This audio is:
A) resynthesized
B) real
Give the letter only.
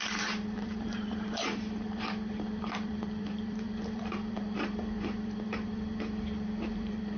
A